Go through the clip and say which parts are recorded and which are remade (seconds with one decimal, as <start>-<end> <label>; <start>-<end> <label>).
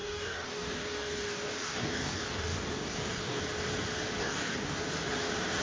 0.0-3.4 remade; 3.4-4.2 recorded; 4.2-4.8 remade; 4.8-5.6 recorded